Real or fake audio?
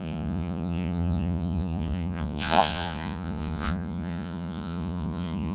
fake